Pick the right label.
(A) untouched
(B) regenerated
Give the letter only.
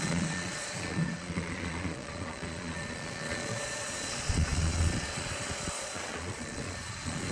B